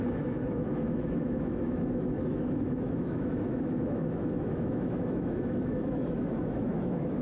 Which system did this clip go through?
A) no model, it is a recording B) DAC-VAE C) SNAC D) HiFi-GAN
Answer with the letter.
B